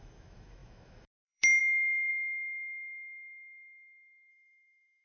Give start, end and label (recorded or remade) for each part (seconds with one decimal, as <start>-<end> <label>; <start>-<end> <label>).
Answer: 0.0-2.1 remade; 2.1-4.3 recorded; 4.3-5.0 remade